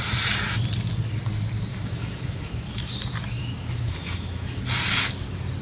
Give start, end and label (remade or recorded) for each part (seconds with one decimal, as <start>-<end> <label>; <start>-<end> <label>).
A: 0.0-1.7 recorded; 1.7-2.9 remade; 2.9-3.4 recorded; 3.4-4.6 remade; 4.6-5.6 recorded